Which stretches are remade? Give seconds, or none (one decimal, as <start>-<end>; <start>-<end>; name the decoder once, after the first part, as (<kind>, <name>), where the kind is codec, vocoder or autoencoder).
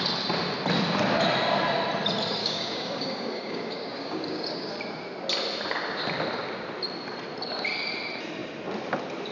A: 2.4-4.7 (codec, DAC)